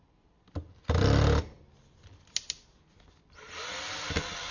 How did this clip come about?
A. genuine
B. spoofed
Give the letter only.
A